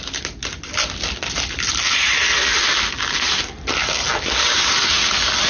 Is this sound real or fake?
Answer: real